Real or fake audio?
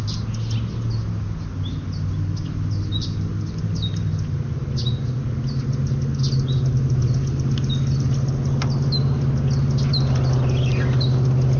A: real